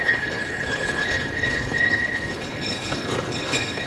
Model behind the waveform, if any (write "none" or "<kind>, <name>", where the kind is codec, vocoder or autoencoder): codec, HILCodec